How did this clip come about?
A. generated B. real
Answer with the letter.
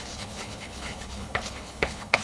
A